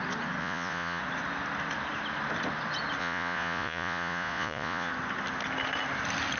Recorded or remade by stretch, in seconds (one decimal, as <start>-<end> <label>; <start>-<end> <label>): 0.0-0.4 recorded; 0.4-1.0 remade; 1.0-3.0 recorded; 3.0-4.9 remade; 4.9-6.4 recorded